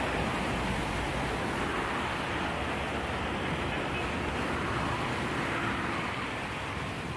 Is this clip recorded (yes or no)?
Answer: yes